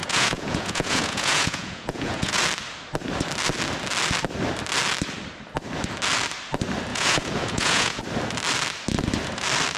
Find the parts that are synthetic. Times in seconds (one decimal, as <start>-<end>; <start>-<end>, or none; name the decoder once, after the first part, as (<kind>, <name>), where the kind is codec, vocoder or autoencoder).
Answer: 0.0-2.4 (vocoder, Vocos); 6.9-8.0